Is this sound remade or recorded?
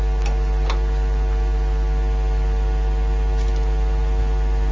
recorded